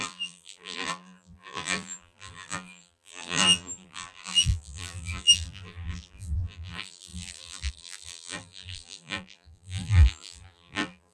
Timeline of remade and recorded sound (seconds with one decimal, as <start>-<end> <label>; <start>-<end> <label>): 0.0-11.1 remade